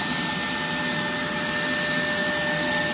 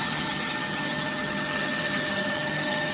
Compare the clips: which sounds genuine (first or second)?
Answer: first